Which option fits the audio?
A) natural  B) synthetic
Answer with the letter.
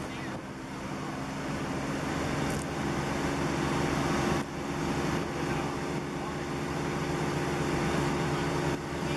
A